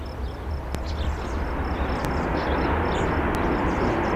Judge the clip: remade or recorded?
recorded